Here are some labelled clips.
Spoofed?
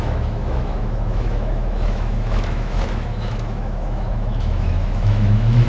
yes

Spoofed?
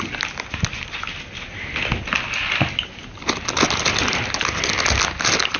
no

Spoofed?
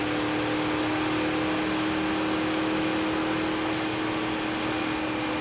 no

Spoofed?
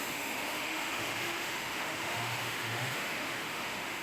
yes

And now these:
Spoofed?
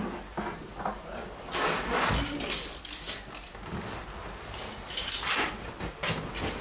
no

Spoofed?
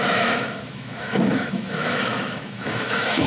yes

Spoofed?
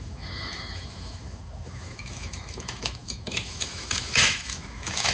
yes